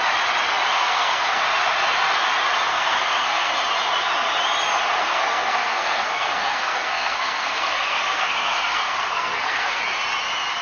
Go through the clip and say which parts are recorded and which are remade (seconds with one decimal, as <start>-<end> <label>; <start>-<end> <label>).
0.0-0.7 recorded; 0.7-1.4 remade; 1.4-2.7 recorded; 2.7-3.5 remade; 3.5-5.0 recorded; 5.0-9.8 remade; 9.8-10.6 recorded